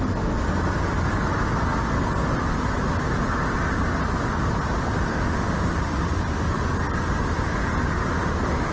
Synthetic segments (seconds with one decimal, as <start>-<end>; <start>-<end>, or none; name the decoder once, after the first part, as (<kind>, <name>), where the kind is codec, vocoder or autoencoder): 5.1-5.7 (autoencoder, DAC-VAE)